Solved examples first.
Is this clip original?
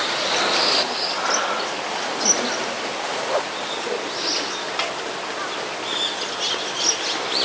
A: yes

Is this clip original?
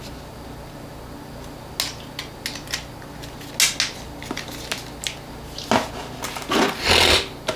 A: yes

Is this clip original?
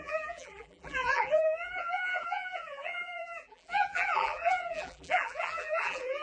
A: no